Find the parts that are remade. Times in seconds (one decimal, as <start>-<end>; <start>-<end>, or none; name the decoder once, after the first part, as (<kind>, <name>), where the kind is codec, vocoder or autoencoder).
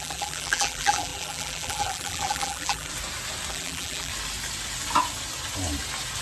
0.0-2.9 (vocoder, BigVGAN v2); 3.5-4.1